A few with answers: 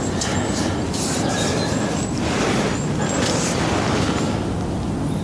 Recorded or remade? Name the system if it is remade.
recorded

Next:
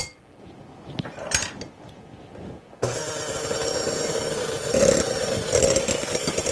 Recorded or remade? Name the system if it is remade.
recorded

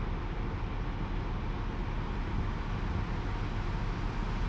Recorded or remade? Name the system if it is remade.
recorded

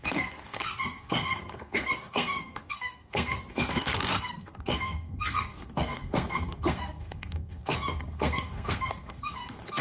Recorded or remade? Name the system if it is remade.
remade, codec, SNAC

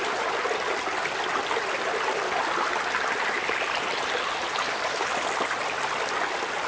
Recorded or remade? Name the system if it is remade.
recorded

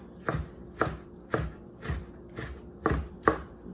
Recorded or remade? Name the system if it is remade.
recorded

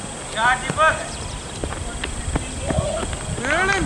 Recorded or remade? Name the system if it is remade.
recorded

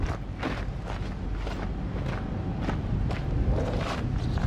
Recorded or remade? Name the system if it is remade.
recorded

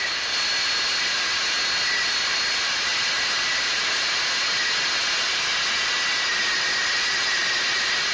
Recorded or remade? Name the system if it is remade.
recorded